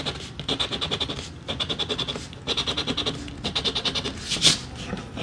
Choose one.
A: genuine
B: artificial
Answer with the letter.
A